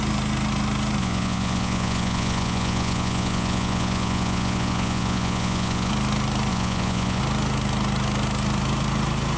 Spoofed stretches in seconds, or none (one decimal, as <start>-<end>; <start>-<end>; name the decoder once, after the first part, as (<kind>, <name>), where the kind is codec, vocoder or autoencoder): 1.0-5.9 (vocoder, Vocos); 6.5-7.2